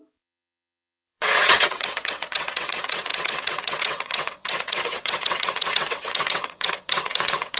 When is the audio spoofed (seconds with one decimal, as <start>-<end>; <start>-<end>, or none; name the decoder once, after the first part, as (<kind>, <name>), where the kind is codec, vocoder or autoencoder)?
0.0-7.6 (vocoder, WaveNeXt)